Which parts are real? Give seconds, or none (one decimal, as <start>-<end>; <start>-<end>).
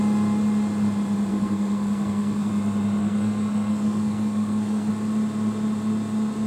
0.0-1.3; 2.5-3.0; 4.9-6.5